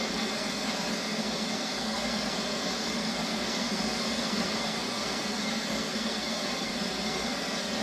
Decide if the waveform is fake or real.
fake